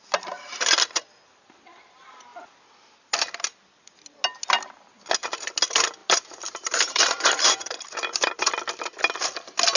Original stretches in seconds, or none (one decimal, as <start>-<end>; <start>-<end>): 0.0-6.0; 8.3-9.8